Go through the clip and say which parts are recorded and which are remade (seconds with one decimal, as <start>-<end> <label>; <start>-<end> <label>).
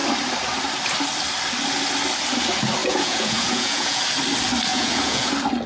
0.0-2.8 recorded; 2.8-4.0 remade; 4.0-4.7 recorded; 4.7-5.3 remade; 5.3-5.7 recorded